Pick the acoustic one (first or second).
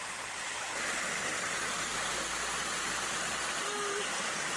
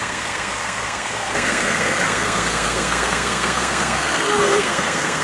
first